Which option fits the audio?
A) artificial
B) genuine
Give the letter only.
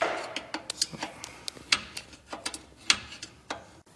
B